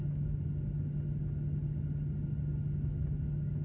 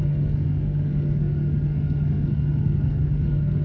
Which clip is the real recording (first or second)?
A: first